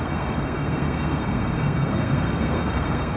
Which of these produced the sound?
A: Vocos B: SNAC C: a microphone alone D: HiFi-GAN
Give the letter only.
B